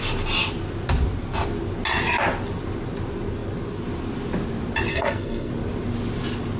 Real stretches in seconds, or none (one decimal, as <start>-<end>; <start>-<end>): 0.0-4.9; 5.5-6.6

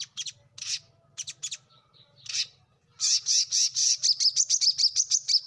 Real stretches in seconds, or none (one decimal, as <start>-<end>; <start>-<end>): 0.0-5.5

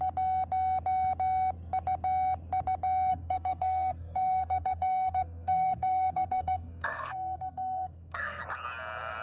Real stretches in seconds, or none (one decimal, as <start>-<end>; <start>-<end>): 0.0-3.1; 8.4-9.2

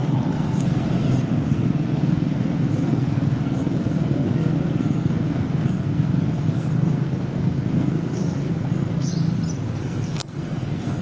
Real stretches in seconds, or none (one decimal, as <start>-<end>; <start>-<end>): 9.1-9.8

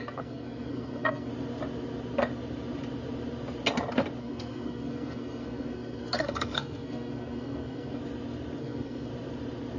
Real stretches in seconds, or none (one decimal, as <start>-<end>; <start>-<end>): 1.3-4.2; 8.0-8.6; 9.1-9.8

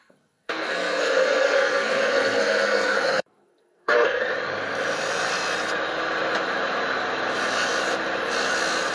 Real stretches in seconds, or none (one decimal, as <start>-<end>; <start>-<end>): 4.2-8.9

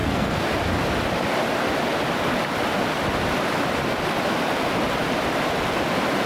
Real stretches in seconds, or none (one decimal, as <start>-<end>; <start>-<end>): 0.5-6.3